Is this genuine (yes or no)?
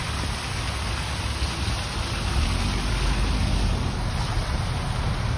yes